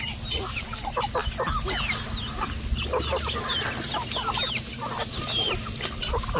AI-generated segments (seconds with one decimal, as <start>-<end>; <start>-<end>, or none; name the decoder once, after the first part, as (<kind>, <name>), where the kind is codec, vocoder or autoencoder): none